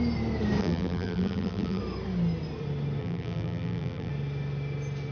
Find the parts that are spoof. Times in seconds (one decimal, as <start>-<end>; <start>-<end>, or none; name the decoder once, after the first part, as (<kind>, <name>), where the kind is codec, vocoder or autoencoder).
0.6-1.8 (vocoder, BigVGAN v2); 3.0-4.1